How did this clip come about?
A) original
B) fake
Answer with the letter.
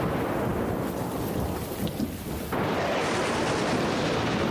B